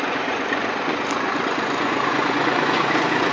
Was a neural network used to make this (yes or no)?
yes